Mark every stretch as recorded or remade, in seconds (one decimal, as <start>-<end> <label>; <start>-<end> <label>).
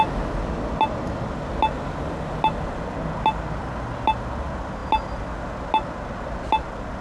0.0-7.0 recorded